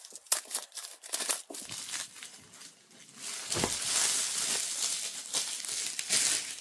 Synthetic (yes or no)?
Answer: no